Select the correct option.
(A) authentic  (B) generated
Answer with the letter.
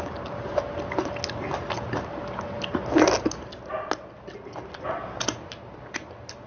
A